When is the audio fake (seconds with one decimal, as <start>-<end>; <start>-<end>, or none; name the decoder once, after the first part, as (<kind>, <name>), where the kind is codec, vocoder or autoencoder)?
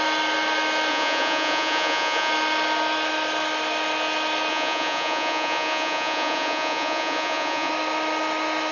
0.9-2.3 (vocoder, Vocos); 4.5-7.7